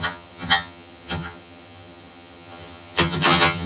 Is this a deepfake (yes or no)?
yes